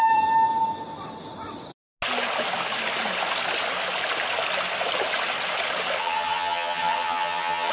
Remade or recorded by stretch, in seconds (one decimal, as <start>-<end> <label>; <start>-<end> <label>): 0.0-6.0 recorded; 6.0-7.7 remade